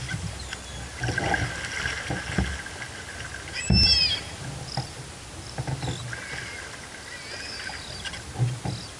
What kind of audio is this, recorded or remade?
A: recorded